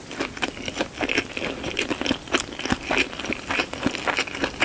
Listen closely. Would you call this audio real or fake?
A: real